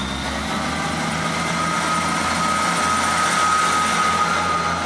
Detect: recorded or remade recorded